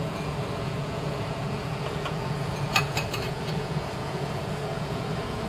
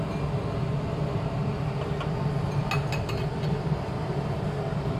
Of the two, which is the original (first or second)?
second